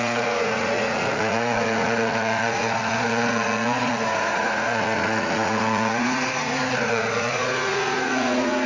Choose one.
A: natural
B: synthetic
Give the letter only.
B